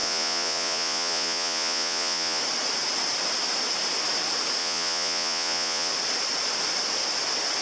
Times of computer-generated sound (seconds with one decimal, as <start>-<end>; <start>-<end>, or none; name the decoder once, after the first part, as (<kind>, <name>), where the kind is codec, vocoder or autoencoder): 0.0-2.4 (vocoder, Vocos); 4.6-5.9